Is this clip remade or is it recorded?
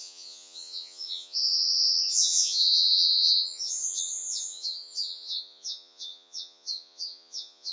remade